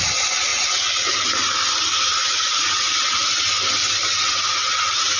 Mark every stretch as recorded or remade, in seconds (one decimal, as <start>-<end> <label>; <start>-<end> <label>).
0.0-5.2 recorded